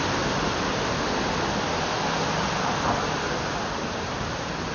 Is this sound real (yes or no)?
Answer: yes